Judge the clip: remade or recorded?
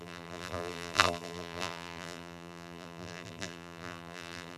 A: remade